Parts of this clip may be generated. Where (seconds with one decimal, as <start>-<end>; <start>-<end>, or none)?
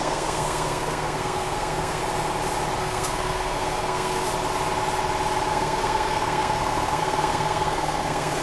0.0-2.0; 2.8-4.3; 5.5-8.4